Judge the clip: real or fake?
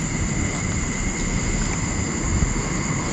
real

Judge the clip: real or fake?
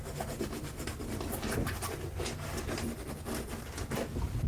real